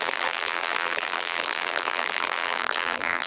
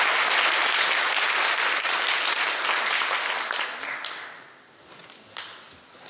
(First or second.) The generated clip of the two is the first